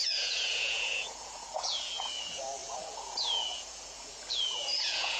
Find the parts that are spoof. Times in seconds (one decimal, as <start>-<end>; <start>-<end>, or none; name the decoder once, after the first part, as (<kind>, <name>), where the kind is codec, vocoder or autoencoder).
0.0-5.2 (vocoder, Vocos)